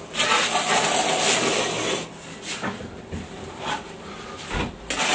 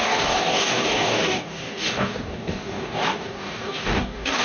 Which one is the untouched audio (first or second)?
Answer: first